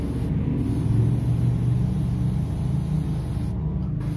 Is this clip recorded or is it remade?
recorded